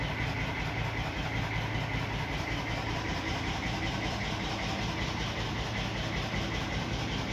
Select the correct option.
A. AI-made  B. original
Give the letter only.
B